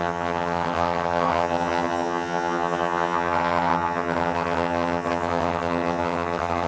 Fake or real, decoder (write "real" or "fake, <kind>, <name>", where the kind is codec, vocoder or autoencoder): fake, vocoder, HiFi-GAN